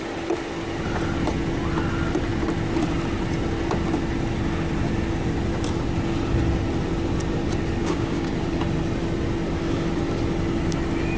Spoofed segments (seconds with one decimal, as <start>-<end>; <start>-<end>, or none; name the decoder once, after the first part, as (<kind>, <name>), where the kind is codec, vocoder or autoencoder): 7.8-8.3 (codec, DAC)